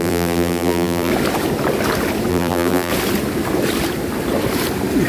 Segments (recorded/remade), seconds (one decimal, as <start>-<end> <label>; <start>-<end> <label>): 0.0-1.1 remade; 1.1-2.3 recorded; 2.3-2.9 remade; 2.9-5.1 recorded